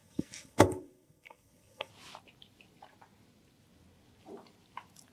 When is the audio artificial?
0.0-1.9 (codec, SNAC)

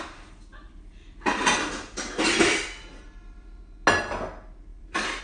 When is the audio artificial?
0.5-3.6 (vocoder, BigVGAN v2); 4.7-5.2